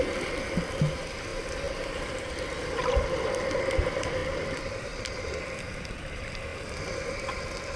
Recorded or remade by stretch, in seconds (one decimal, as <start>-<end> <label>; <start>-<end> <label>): 0.0-7.8 recorded